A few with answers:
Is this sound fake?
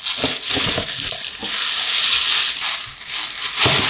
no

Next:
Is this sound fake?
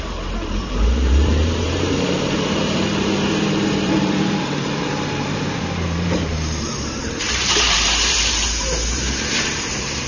yes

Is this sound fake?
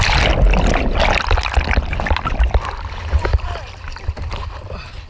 no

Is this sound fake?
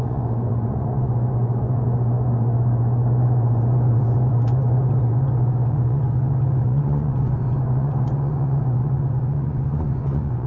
yes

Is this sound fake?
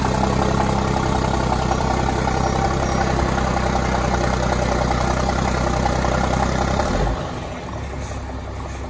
no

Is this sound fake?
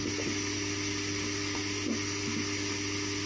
no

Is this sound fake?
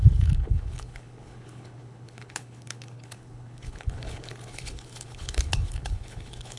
yes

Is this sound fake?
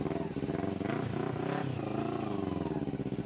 no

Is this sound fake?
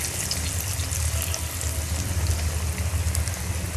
no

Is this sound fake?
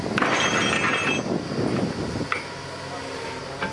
no